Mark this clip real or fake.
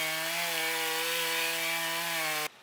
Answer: real